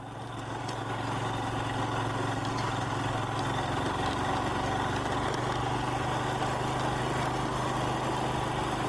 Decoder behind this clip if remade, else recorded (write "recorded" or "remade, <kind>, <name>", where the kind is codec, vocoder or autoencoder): recorded